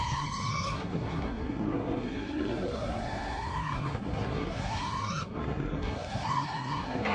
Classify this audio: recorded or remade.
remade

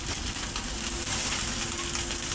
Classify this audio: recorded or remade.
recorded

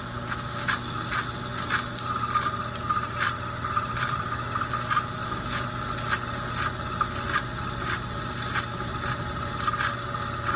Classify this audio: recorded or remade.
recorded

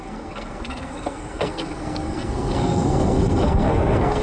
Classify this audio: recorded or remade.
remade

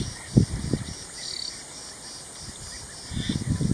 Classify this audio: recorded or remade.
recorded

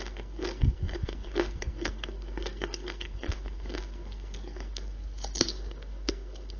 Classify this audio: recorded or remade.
remade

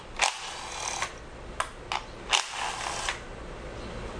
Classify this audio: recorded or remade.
recorded